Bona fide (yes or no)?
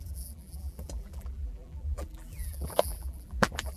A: no